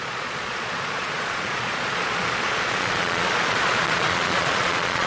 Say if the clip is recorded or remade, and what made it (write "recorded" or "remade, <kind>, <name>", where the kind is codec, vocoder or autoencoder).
remade, vocoder, Vocos